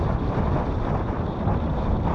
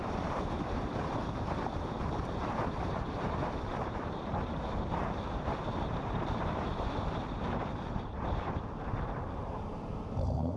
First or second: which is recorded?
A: first